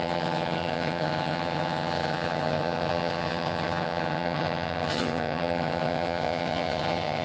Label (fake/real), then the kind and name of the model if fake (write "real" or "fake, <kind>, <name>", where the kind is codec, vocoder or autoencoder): fake, vocoder, HiFi-GAN